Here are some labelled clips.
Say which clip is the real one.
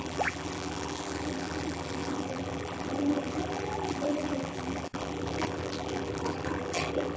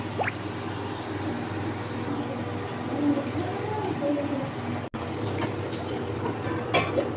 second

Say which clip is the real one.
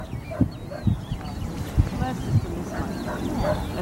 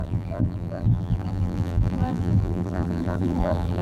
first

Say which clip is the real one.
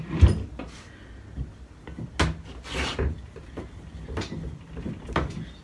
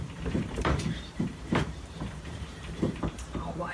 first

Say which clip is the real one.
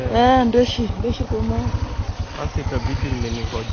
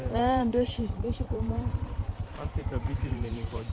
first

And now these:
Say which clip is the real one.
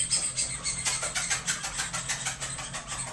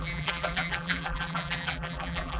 first